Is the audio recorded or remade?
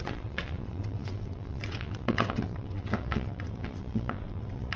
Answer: remade